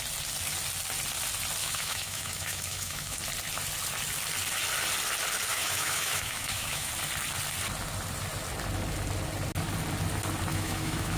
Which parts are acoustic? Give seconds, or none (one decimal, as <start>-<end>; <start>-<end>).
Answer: 0.0-1.6; 3.2-5.5; 6.9-10.5